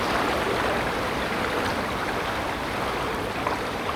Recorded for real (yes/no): yes